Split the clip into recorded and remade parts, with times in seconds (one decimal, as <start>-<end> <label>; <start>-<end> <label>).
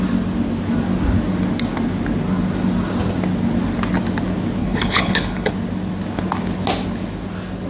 0.0-4.6 recorded; 4.6-5.5 remade; 5.5-7.7 recorded